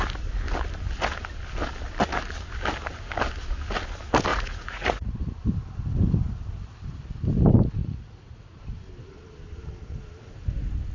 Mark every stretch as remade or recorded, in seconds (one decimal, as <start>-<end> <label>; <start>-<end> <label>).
0.0-4.3 recorded; 4.3-5.3 remade; 5.3-7.8 recorded; 7.8-8.6 remade; 8.6-10.9 recorded